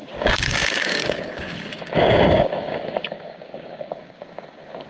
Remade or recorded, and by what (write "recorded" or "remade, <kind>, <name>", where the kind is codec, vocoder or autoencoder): remade, codec, DAC